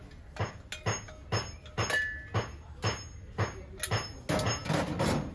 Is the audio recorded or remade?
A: recorded